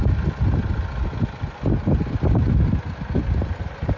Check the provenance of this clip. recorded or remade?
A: recorded